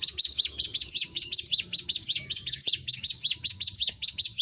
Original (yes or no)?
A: no